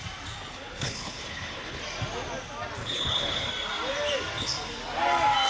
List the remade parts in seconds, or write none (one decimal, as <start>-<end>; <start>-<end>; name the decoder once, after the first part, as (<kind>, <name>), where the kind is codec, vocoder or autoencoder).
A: 0.5-1.8 (codec, HILCodec); 2.8-3.5